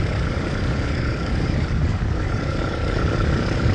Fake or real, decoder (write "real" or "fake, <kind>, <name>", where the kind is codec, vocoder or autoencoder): fake, codec, DAC